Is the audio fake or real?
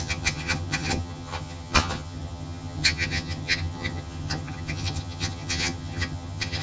fake